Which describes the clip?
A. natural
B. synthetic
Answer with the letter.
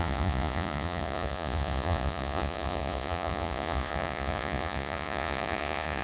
B